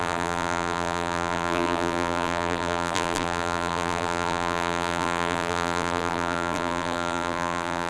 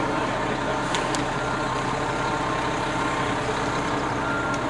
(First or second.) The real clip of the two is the second